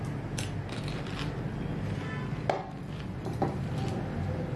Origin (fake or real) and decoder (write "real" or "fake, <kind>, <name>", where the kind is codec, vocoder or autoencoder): real